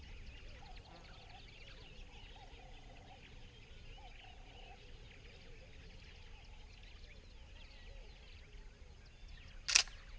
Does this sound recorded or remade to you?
recorded